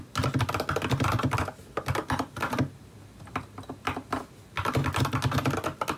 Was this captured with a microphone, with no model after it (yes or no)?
yes